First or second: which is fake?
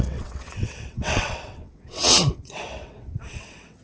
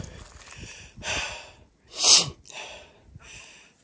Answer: first